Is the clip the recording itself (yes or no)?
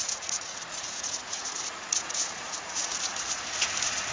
no